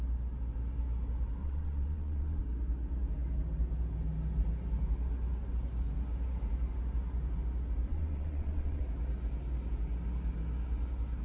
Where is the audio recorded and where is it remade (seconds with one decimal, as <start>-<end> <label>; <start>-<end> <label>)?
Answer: 0.0-1.4 recorded; 1.4-2.4 remade; 2.4-7.9 recorded; 7.9-8.8 remade; 8.8-11.2 recorded